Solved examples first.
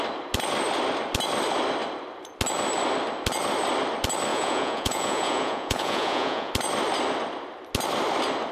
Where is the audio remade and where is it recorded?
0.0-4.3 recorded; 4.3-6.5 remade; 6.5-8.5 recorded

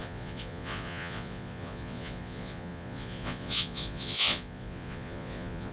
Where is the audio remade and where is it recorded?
0.0-5.7 remade

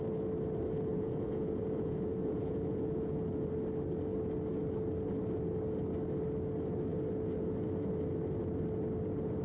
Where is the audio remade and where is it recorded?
0.0-0.9 recorded; 0.9-3.5 remade; 3.5-9.4 recorded

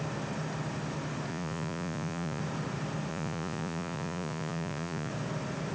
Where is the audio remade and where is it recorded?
0.0-1.3 recorded; 1.3-2.4 remade; 2.4-3.1 recorded; 3.1-5.1 remade; 5.1-5.7 recorded

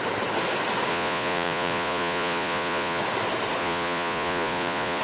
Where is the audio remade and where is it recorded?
0.0-0.9 recorded; 0.9-3.0 remade; 3.0-3.6 recorded; 3.6-5.0 remade

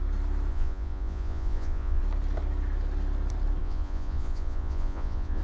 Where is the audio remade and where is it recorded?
0.0-0.5 recorded; 0.5-2.0 remade; 2.0-3.6 recorded; 3.6-5.4 remade

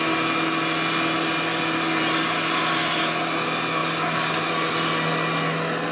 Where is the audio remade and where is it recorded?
0.0-5.9 recorded

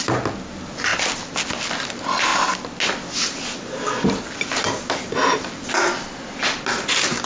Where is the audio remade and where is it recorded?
0.0-7.3 recorded